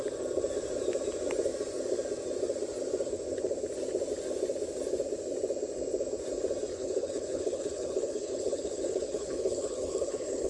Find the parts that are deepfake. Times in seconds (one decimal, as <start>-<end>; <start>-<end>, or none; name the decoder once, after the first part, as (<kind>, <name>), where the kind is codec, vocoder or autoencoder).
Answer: 6.7-10.5 (codec, HILCodec)